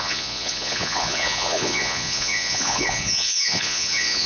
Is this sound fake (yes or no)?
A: yes